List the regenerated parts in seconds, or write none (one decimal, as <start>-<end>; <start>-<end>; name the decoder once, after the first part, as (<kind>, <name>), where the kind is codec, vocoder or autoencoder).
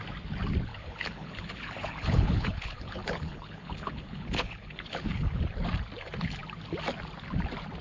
0.7-5.4 (codec, HILCodec)